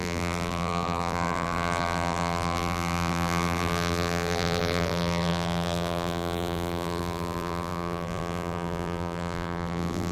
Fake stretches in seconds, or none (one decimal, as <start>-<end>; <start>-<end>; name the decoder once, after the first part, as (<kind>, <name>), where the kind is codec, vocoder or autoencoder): 0.0-10.1 (vocoder, BigVGAN v2)